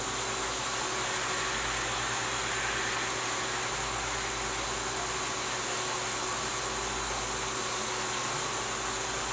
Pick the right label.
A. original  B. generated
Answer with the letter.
A